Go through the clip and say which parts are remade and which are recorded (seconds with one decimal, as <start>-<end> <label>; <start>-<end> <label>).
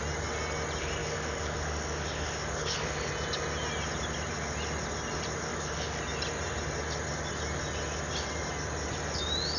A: 0.0-1.0 recorded; 1.0-3.1 remade; 3.1-5.5 recorded; 5.5-6.0 remade; 6.0-9.6 recorded